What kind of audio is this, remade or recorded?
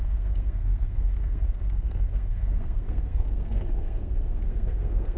remade